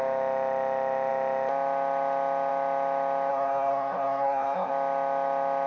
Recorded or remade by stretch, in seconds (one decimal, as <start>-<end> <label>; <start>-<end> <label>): 0.0-3.3 recorded; 3.3-4.7 remade; 4.7-5.7 recorded